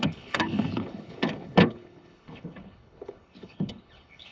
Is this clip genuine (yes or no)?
no